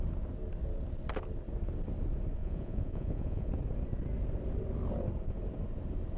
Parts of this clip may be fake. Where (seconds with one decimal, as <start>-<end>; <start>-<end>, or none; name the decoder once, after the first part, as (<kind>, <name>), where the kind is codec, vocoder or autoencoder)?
2.4-3.5 (vocoder, Vocos)